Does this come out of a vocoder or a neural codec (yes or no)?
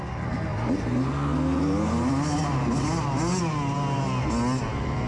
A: no